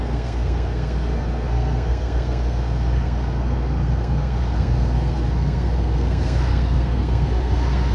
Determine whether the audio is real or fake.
fake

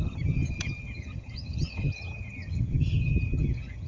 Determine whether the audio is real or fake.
fake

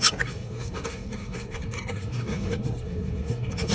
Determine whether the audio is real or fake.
fake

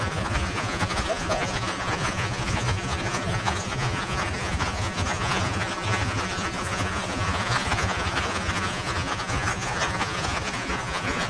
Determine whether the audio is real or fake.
fake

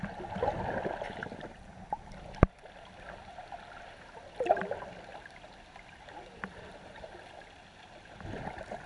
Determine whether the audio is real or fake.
real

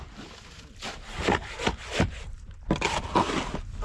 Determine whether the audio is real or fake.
real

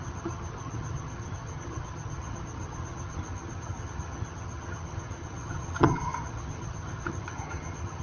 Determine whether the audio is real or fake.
fake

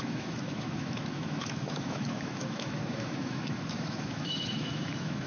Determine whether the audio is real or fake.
fake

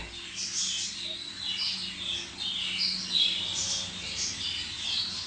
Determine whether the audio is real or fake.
real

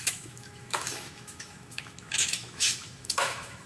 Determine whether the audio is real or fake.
fake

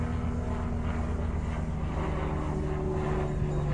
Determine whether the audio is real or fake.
real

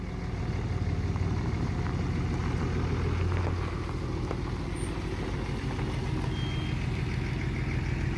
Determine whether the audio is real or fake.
real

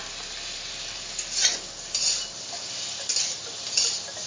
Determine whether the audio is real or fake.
real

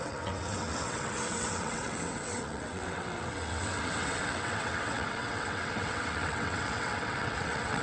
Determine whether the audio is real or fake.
fake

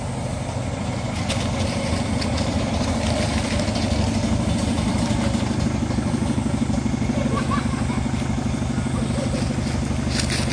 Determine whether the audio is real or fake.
real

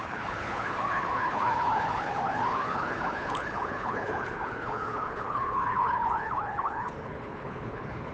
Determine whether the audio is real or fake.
fake